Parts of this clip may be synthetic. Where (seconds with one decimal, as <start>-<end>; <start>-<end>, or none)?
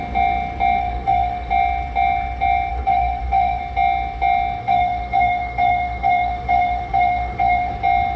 0.8-1.5; 2.7-3.6; 4.6-7.7